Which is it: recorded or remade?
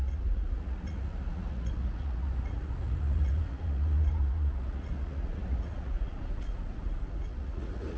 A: remade